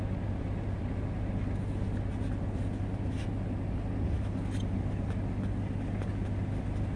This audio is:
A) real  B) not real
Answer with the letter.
A